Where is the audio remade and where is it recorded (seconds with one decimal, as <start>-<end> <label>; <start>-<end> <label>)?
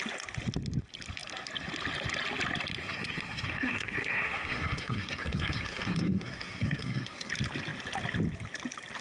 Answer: 0.0-2.8 recorded; 2.8-7.3 remade; 7.3-9.0 recorded